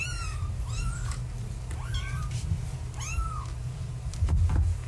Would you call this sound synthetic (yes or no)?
no